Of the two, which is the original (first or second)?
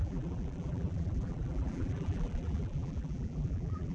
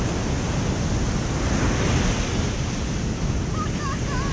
second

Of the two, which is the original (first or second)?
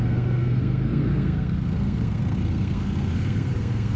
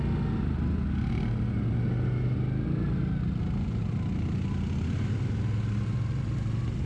second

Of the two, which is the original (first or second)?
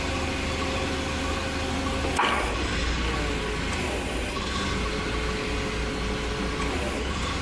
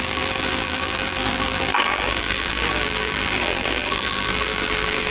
first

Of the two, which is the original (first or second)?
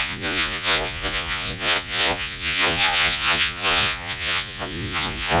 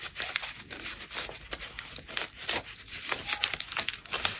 second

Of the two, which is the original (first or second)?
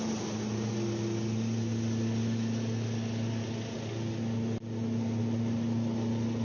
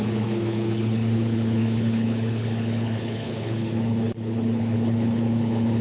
first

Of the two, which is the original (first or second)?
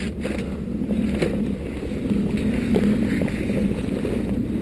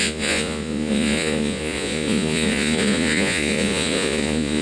first